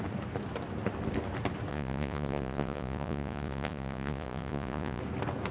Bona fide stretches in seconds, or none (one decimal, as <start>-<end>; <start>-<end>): 0.0-1.7; 5.0-5.5